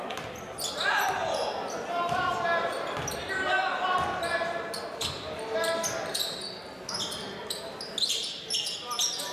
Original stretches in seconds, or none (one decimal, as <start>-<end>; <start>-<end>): 0.0-9.3